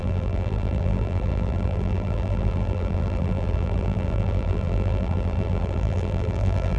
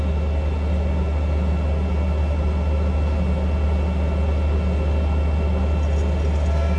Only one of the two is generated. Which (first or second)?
first